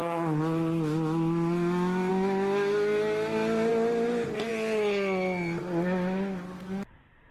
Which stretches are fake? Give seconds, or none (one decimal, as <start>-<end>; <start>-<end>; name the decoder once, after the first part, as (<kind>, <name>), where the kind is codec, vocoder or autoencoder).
none